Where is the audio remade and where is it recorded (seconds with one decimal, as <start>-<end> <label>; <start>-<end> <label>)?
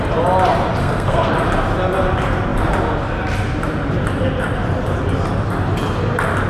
0.0-0.8 recorded; 0.8-1.3 remade; 1.3-6.5 recorded